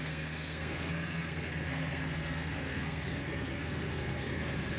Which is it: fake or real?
fake